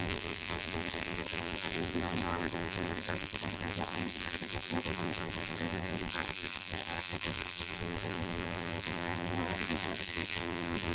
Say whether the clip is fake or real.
fake